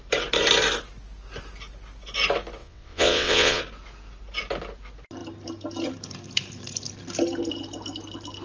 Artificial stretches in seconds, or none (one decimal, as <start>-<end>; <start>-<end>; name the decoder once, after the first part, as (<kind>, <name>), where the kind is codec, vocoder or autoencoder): 2.6-3.6 (vocoder, WaveNeXt)